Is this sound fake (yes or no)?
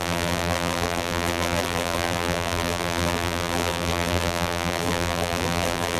yes